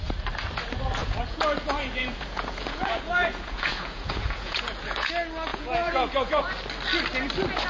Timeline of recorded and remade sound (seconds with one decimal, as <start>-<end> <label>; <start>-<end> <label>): 0.0-1.0 recorded; 1.0-5.1 remade; 5.1-5.5 recorded; 5.5-6.4 remade; 6.4-7.7 recorded